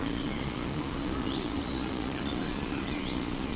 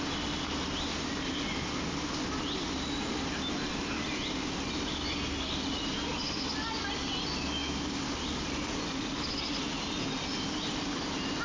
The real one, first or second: second